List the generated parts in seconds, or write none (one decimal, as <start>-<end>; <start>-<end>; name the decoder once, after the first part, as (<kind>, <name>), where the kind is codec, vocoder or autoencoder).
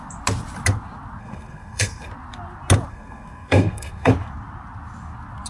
1.2-2.1 (codec, SNAC); 2.9-4.1